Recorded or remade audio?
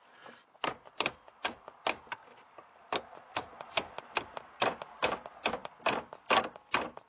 recorded